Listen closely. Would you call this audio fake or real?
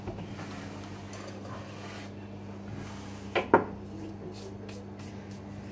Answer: real